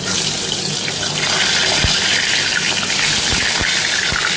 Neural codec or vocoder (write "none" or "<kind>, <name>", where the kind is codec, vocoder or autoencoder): none